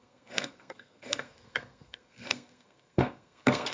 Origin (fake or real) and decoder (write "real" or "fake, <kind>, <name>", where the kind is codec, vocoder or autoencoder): fake, codec, SNAC